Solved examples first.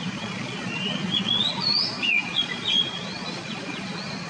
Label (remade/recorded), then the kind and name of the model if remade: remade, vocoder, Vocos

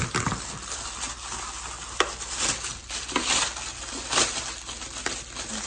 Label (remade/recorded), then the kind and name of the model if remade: recorded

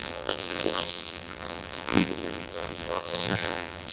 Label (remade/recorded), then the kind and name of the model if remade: remade, vocoder, BigVGAN v2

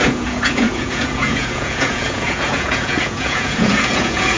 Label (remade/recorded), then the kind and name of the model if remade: remade, vocoder, Vocos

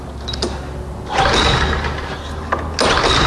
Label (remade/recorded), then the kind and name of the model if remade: recorded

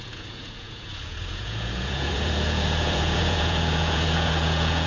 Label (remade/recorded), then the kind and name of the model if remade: remade, vocoder, Vocos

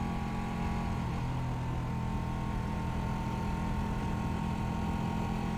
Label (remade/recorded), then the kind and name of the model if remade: recorded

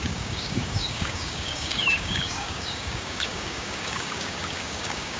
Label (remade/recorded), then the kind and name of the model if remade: remade, codec, DAC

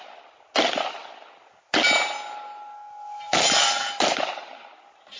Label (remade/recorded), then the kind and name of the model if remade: recorded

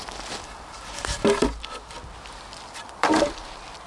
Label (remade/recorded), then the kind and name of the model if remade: recorded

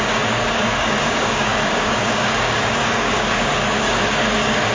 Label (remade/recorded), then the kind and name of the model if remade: remade, codec, DAC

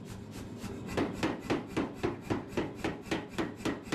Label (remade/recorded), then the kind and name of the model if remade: recorded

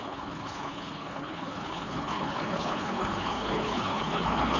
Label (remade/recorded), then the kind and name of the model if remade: remade, codec, HILCodec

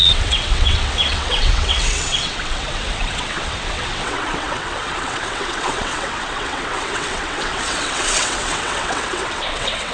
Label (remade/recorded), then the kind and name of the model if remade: remade, vocoder, WaveNeXt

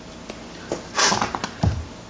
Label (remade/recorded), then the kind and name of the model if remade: recorded